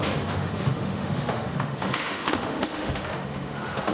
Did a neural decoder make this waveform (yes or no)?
yes